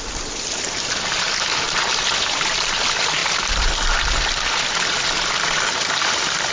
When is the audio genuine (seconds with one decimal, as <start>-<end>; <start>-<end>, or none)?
0.0-6.5

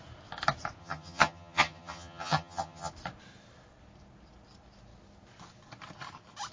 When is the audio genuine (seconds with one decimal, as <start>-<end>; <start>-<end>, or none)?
0.0-0.8; 2.9-6.5

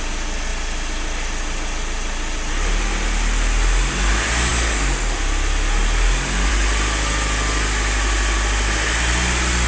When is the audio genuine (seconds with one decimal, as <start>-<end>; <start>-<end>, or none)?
0.0-9.7

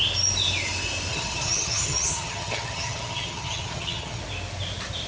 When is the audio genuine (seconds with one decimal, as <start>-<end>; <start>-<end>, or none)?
0.0-1.1; 4.2-5.1